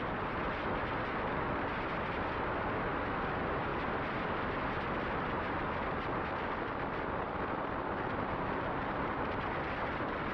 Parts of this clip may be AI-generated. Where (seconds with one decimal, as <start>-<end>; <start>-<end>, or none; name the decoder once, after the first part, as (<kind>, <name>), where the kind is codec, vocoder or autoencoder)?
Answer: none